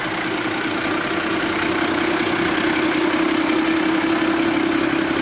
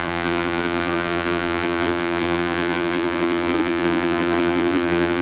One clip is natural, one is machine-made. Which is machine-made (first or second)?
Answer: second